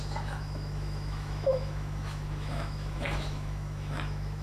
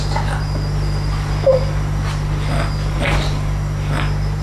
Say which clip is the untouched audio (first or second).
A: second